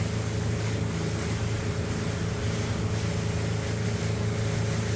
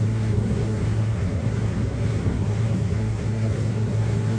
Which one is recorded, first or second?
first